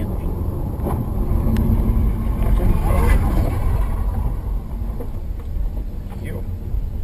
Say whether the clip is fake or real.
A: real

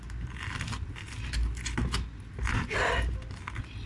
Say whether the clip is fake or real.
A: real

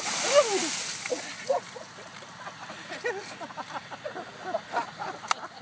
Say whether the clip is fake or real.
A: real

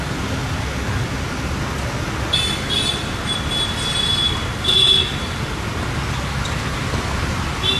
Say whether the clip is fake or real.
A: real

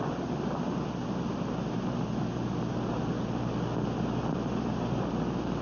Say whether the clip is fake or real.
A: real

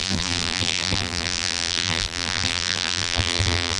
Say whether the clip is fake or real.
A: fake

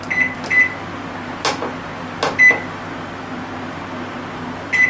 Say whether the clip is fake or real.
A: real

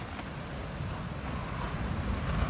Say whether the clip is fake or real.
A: real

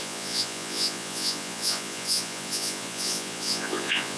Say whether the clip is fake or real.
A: fake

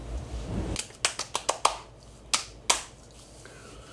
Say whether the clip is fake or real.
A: real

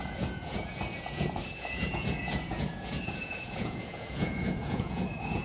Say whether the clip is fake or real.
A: fake